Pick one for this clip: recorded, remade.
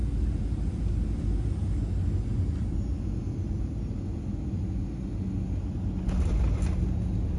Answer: recorded